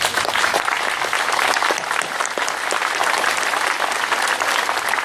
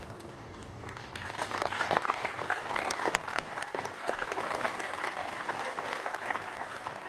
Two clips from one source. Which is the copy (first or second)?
second